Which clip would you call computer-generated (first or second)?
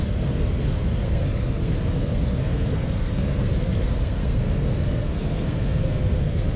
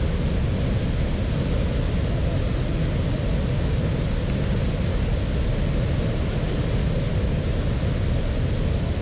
first